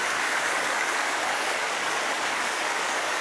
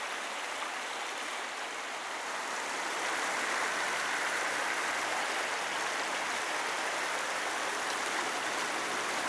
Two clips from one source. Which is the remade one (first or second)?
first